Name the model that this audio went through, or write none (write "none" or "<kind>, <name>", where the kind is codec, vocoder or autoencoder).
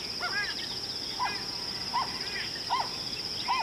none